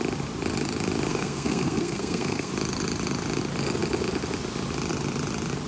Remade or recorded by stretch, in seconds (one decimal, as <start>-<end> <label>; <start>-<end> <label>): 0.0-1.1 recorded; 1.1-2.5 remade; 2.5-5.7 recorded